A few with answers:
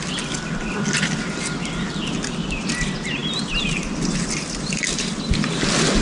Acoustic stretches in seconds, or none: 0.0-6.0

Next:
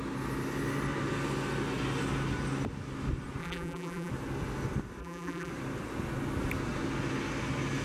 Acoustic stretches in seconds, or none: 0.0-3.4; 4.1-5.0; 5.5-7.8

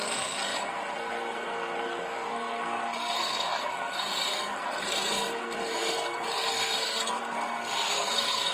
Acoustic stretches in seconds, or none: none

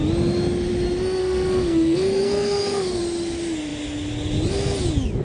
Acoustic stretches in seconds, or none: 0.0-1.2; 3.0-5.2

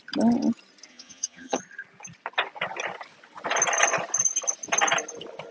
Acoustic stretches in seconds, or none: 0.0-0.9; 1.6-5.5

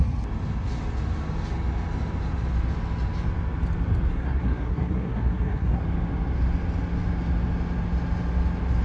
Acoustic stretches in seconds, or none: 0.0-4.1; 5.8-8.8

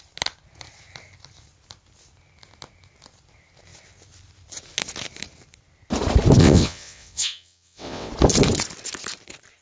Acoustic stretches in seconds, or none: 0.0-6.4; 8.1-9.6

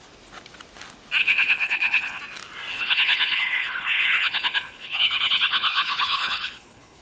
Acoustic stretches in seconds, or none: 0.0-1.2; 2.2-2.7